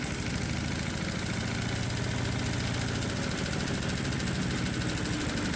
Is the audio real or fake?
real